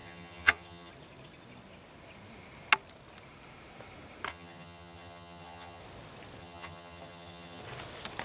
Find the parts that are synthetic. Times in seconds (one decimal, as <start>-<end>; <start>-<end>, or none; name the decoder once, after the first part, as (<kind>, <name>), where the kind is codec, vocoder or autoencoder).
0.0-0.9 (vocoder, HiFi-GAN); 4.3-5.8; 6.4-7.6